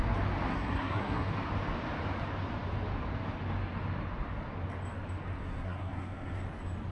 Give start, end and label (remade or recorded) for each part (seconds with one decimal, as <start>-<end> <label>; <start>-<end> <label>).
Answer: 0.0-0.5 recorded; 0.5-1.3 remade; 1.3-5.4 recorded; 5.4-6.4 remade; 6.4-6.9 recorded